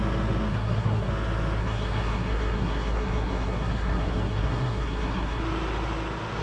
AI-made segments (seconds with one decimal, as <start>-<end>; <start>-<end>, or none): 0.5-1.1; 1.6-5.4